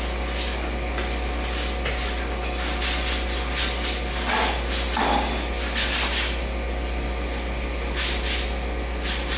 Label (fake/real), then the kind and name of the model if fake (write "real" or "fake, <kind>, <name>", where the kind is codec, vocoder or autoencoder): real